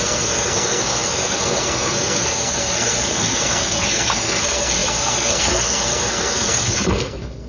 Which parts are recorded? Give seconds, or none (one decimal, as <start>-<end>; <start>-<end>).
none